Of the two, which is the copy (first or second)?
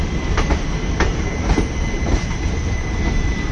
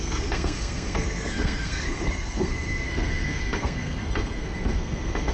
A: second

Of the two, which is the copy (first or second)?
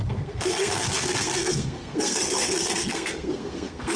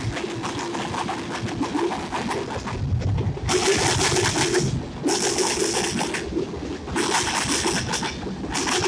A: first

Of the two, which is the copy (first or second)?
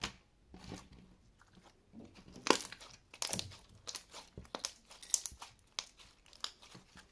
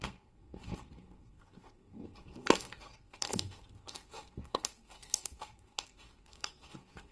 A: second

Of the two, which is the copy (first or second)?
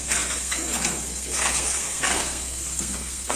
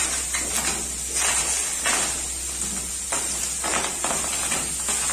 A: first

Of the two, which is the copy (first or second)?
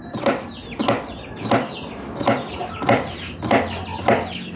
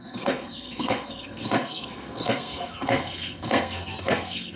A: second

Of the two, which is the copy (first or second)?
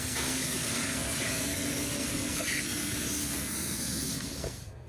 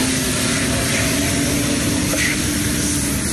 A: first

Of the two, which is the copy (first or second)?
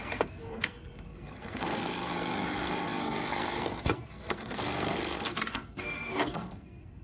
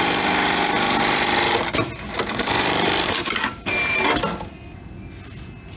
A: first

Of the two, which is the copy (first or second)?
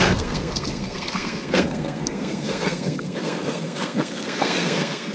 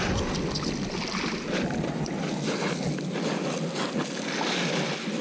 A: first